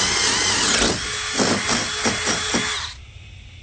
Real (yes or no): yes